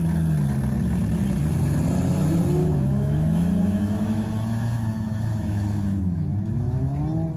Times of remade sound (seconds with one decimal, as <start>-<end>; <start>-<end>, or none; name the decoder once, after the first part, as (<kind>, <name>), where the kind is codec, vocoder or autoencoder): 2.6-7.0 (autoencoder, DAC-VAE)